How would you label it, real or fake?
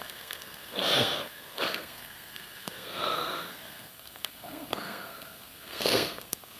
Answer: fake